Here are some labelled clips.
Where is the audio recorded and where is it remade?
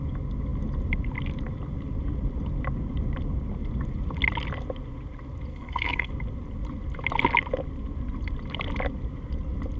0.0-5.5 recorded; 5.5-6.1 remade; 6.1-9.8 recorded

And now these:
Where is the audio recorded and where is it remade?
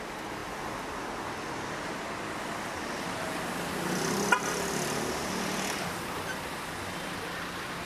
0.0-7.9 recorded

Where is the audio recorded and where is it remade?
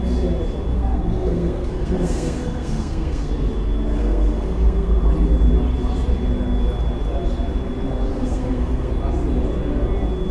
0.0-0.7 recorded; 0.7-3.3 remade; 3.3-4.0 recorded; 4.0-5.0 remade; 5.0-8.1 recorded; 8.1-8.9 remade; 8.9-10.3 recorded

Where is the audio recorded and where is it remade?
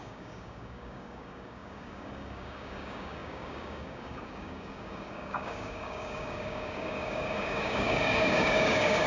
0.0-9.1 remade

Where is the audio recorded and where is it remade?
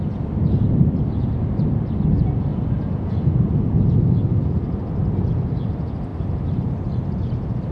0.0-2.5 recorded; 2.5-3.6 remade; 3.6-7.7 recorded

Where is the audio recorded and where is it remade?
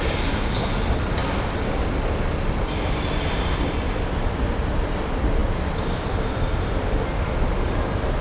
0.0-8.2 recorded